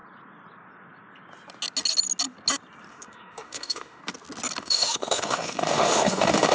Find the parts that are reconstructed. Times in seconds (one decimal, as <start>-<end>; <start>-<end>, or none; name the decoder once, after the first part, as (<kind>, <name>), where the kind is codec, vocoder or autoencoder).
2.9-4.0 (autoencoder, DAC-VAE); 4.6-6.5